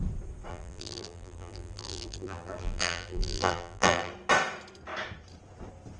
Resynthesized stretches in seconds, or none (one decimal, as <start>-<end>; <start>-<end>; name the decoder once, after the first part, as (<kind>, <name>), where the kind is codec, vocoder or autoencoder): 0.5-4.1 (vocoder, BigVGAN v2)